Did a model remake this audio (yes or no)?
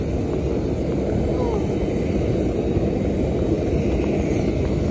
no